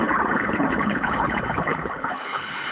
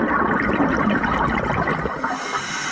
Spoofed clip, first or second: first